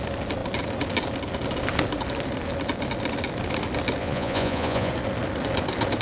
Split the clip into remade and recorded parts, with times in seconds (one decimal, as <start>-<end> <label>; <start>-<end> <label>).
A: 0.0-4.0 recorded; 4.0-4.9 remade; 4.9-6.0 recorded